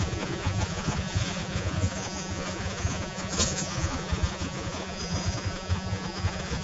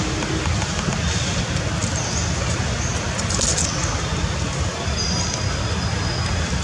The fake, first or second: first